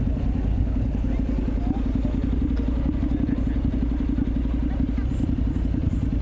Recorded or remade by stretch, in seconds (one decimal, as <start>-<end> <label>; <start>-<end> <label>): 0.0-0.5 recorded; 0.5-1.1 remade; 1.1-6.2 recorded